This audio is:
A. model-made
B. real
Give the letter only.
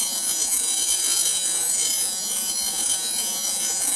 A